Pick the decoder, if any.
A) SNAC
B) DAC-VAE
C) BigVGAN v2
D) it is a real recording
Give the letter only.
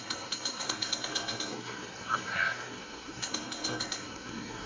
A